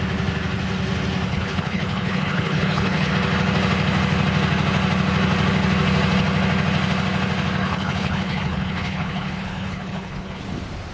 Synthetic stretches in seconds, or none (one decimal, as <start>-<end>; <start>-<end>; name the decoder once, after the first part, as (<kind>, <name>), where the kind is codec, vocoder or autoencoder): 1.3-3.1 (codec, HILCodec); 7.6-10.4